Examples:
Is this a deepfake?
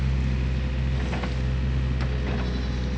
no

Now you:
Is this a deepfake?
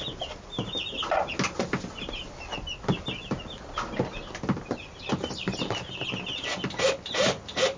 no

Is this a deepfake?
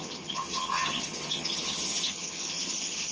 yes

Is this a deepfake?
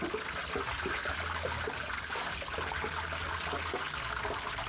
no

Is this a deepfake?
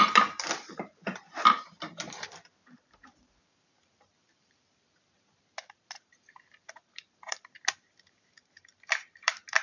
yes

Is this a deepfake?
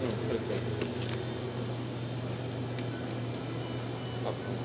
no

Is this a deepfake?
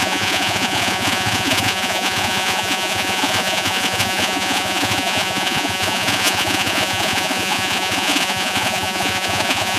yes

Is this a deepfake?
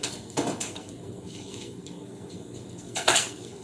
yes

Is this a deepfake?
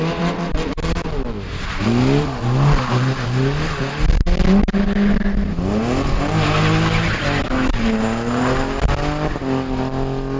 no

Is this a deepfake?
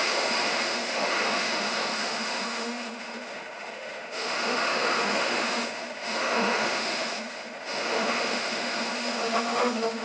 yes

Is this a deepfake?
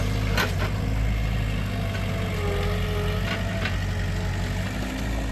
no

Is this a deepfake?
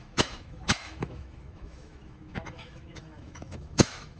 yes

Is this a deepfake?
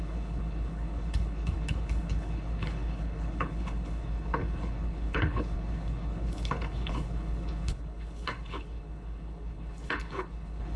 yes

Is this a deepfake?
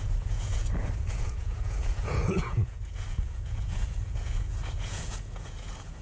yes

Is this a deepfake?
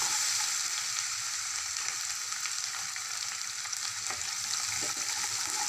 no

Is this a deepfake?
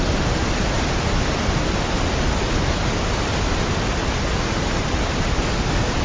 no